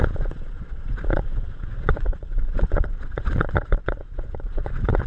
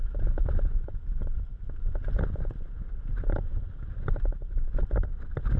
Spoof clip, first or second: first